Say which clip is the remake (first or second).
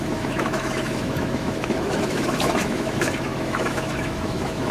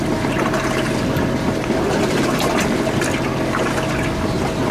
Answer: first